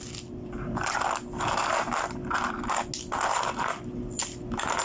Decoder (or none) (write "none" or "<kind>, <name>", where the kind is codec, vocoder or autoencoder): none